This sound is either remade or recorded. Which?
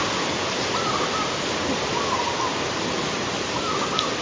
recorded